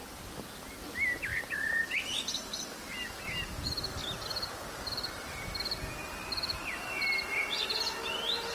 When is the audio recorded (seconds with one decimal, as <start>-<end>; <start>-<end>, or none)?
0.7-1.3; 1.8-4.0; 6.9-8.5